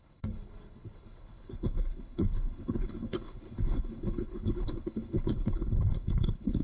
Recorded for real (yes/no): no